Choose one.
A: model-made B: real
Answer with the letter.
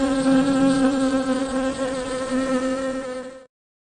A